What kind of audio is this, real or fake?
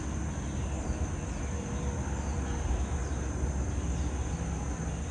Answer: real